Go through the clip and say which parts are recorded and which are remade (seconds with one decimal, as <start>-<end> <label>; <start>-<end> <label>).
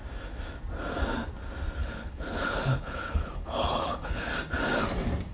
0.0-1.8 recorded; 1.8-4.3 remade; 4.3-5.3 recorded